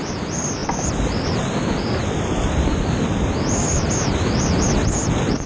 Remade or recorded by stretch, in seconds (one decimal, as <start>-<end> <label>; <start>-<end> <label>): 0.0-5.5 recorded